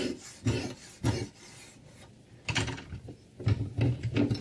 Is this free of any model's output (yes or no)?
yes